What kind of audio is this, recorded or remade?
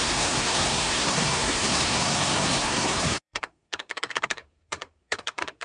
remade